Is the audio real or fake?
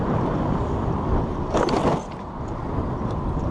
real